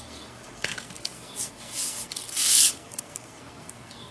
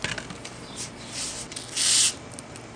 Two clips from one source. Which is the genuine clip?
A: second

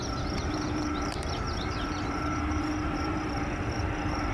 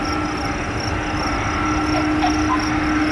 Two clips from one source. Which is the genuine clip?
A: second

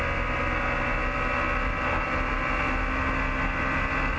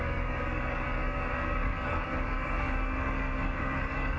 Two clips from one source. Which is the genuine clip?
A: first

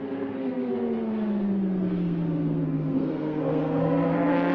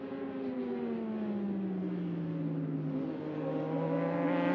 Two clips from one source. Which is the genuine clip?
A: second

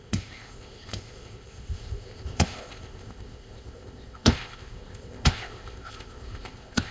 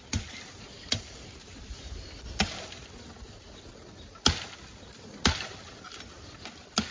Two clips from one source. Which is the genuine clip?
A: second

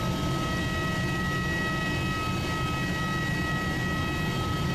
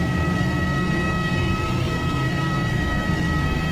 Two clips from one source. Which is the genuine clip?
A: first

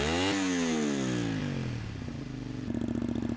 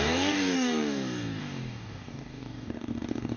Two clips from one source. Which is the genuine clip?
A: first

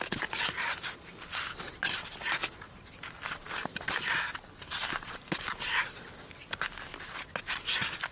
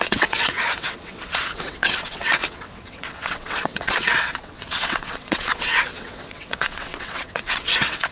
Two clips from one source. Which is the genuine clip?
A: first